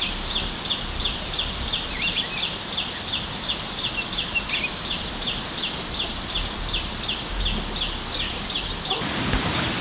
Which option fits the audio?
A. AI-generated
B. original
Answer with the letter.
B